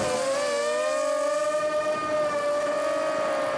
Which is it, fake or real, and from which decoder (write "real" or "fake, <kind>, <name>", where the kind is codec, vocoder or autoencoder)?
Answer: real